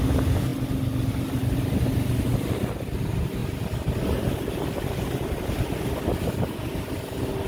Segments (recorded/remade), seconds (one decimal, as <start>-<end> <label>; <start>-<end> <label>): 0.0-7.5 recorded